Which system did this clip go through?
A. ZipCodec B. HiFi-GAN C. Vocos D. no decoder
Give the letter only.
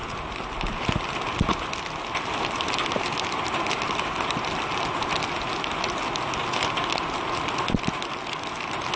D